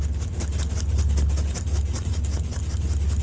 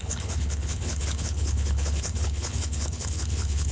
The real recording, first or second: first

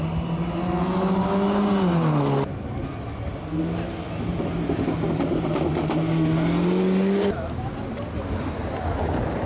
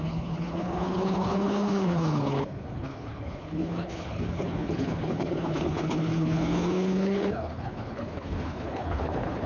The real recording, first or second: first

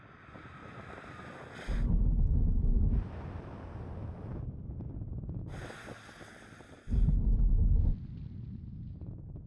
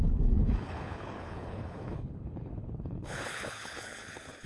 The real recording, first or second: first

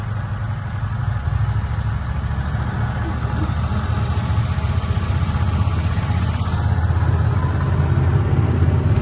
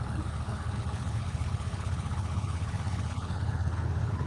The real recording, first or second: first